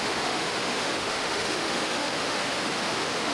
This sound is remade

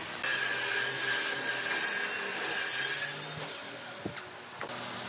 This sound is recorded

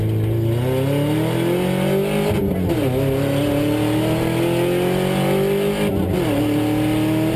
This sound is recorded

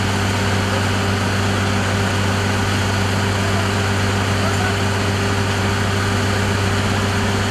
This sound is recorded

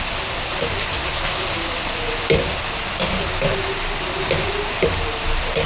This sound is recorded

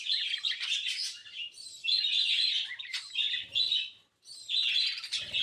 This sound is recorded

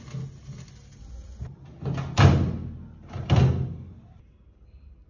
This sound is recorded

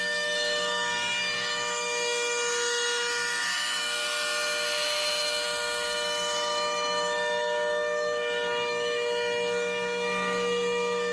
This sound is remade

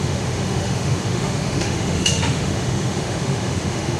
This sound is remade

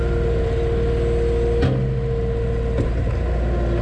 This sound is recorded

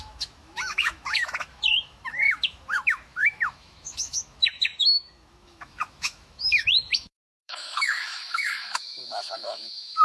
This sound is remade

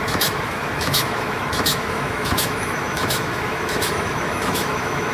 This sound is remade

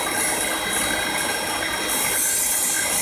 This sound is recorded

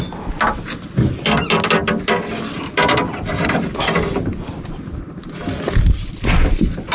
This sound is recorded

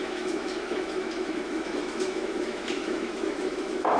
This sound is remade